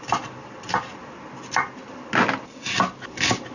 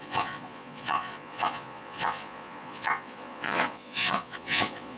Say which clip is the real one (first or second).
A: first